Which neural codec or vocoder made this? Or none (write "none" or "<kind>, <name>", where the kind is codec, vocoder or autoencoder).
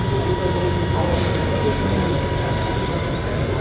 none